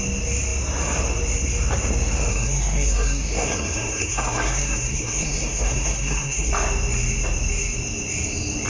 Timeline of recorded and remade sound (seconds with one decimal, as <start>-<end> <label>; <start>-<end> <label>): 0.0-2.3 recorded; 2.3-6.5 remade; 6.5-8.7 recorded